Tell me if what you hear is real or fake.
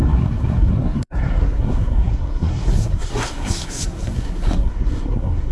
fake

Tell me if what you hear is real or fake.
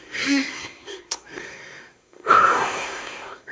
fake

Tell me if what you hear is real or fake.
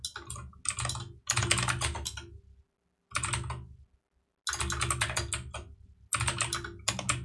real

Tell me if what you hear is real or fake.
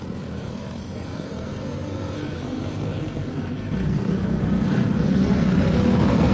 fake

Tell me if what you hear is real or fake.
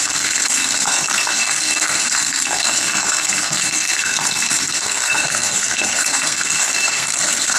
fake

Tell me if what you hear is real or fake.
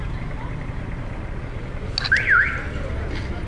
real